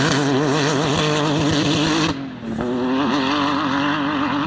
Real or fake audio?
real